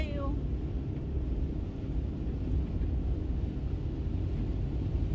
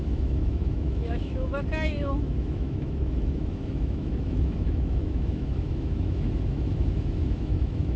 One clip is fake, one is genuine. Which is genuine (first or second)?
first